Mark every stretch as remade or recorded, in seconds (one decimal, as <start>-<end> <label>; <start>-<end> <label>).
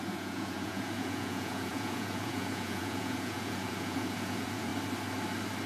0.0-4.7 remade; 4.7-5.7 recorded